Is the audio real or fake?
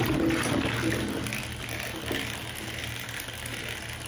real